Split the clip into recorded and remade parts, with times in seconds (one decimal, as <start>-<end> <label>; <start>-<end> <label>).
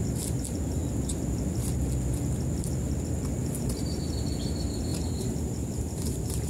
0.0-3.4 recorded; 3.4-4.0 remade; 4.0-4.9 recorded; 4.9-6.5 remade